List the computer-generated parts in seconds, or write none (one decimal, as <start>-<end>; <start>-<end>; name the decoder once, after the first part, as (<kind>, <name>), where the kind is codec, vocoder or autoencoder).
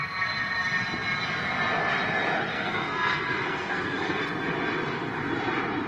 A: 2.5-4.2 (codec, SNAC)